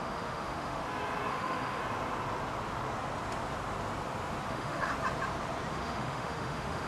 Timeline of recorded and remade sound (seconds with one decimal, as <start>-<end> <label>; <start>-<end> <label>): 0.0-0.8 remade; 0.8-1.3 recorded; 1.3-1.8 remade; 1.8-4.5 recorded; 4.5-4.9 remade; 4.9-5.7 recorded; 5.7-6.9 remade